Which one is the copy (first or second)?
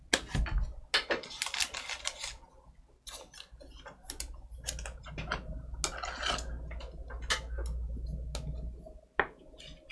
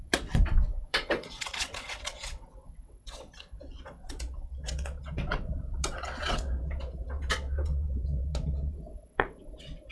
second